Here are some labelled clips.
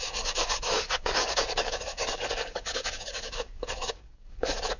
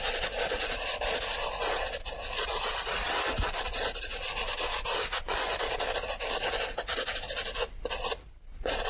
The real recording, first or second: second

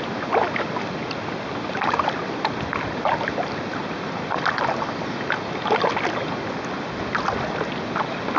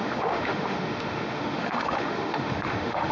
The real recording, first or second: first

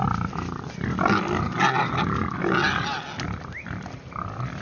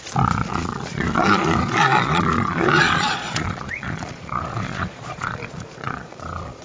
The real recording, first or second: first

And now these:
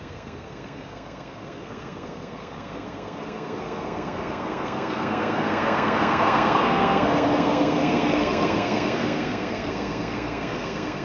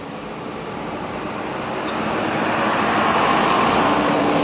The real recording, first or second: second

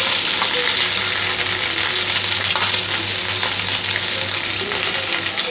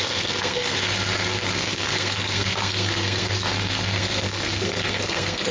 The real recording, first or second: first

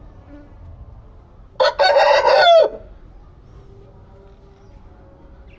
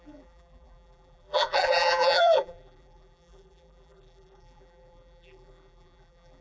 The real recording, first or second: first